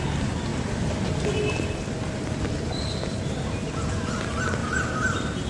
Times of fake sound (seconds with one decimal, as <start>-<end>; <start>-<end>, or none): 0.5-3.2; 4.6-5.5